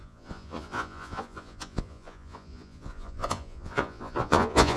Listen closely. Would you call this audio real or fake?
fake